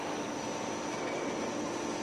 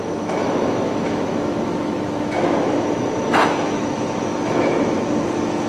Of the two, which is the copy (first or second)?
second